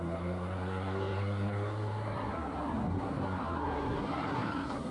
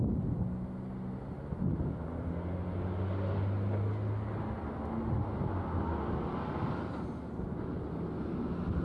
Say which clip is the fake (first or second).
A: first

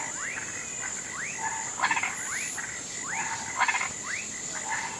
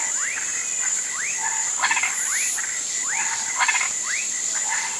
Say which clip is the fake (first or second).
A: second